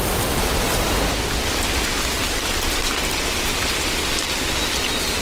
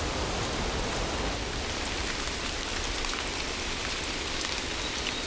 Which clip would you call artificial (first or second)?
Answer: second